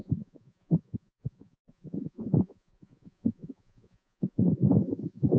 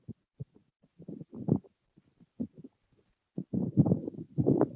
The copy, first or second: first